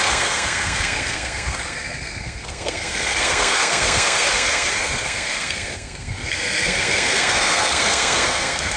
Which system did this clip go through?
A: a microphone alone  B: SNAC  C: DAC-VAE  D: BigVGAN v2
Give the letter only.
B